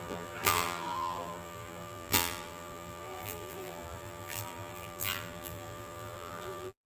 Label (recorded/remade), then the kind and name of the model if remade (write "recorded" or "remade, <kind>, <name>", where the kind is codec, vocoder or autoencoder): remade, vocoder, BigVGAN v2